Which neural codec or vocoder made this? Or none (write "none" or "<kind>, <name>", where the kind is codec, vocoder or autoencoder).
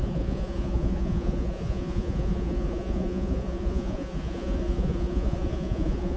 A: vocoder, Vocos